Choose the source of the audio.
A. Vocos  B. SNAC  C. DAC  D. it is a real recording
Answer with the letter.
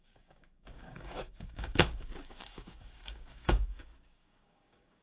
C